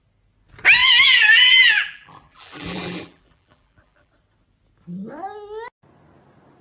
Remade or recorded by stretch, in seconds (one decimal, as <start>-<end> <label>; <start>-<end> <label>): 0.0-0.8 recorded; 0.8-4.1 remade; 4.1-6.6 recorded